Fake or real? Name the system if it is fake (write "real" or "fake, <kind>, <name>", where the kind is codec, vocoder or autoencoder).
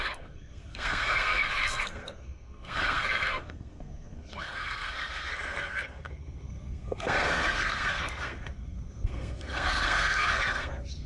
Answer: fake, codec, SNAC